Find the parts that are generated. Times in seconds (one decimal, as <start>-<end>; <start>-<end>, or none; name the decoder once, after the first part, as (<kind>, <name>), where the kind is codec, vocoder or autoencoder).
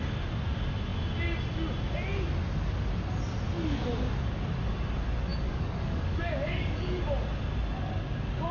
5.3-7.0 (codec, DAC)